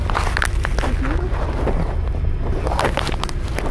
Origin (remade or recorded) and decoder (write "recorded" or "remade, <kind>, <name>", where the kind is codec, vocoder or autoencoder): recorded